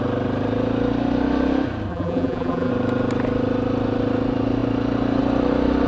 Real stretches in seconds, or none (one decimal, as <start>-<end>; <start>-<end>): 0.0-1.9; 2.7-5.9